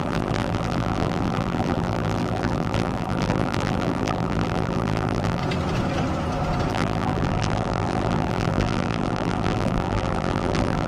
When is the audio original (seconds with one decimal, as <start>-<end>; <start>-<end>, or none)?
5.4-6.7